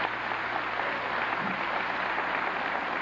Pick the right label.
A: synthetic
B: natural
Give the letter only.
B